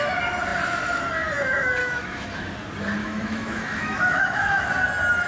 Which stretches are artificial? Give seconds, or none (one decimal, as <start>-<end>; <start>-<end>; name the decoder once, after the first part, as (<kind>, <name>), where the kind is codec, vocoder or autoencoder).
1.8-2.5 (autoencoder, DAC-VAE); 3.0-4.7